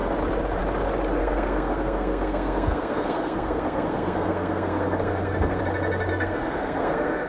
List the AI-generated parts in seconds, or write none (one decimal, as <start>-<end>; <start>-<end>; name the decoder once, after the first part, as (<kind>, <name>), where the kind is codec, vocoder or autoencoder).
1.2-5.6 (codec, SNAC); 6.1-7.3